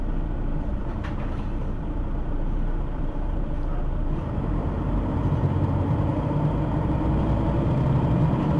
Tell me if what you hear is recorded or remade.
remade